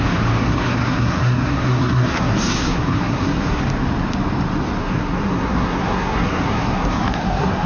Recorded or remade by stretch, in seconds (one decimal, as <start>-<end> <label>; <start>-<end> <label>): 0.0-0.4 recorded; 0.4-3.6 remade; 3.6-4.8 recorded; 4.8-7.7 remade